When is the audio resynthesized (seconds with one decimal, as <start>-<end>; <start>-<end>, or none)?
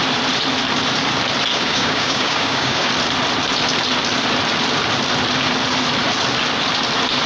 1.5-2.9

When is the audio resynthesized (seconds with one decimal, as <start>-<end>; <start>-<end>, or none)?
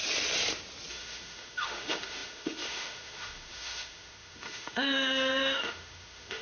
0.9-6.4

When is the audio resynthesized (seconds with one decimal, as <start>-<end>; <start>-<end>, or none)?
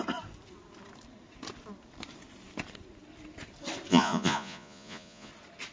3.9-5.3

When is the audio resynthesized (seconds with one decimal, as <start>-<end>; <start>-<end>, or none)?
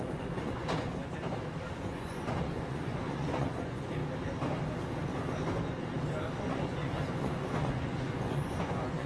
0.0-0.9; 1.8-4.0; 6.4-9.1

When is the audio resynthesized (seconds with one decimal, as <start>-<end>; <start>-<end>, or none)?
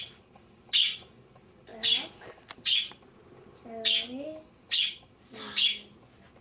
none